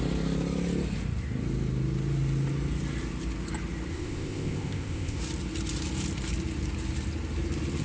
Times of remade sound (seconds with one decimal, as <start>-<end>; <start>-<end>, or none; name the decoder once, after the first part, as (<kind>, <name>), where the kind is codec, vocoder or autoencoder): 3.9-5.2 (codec, ZipCodec)